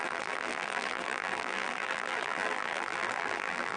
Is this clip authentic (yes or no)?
no